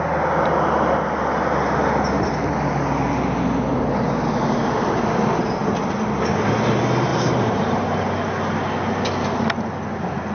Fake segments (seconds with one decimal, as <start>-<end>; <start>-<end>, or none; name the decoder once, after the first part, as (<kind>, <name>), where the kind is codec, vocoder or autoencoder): 7.1-7.8 (vocoder, BigVGAN v2)